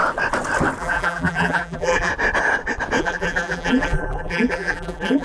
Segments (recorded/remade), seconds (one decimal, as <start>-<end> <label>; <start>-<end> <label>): 0.0-0.8 recorded; 0.8-2.1 remade; 2.1-3.0 recorded; 3.0-5.2 remade